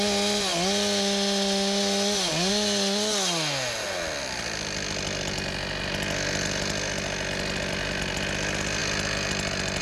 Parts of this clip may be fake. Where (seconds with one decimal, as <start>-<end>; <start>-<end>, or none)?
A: none